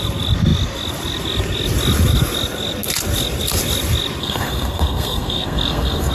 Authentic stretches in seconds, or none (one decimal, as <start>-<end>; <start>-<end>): 0.0-4.2